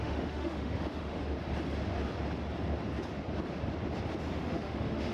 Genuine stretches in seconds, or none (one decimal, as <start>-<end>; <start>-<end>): 1.2-4.3